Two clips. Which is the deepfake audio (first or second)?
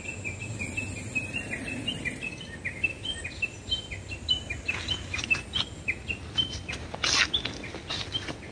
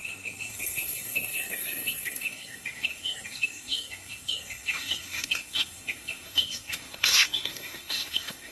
second